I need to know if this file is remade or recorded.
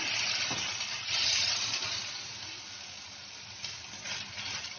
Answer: recorded